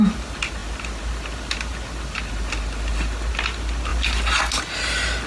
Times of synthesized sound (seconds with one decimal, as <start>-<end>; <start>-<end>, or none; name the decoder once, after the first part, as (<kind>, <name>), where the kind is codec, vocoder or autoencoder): none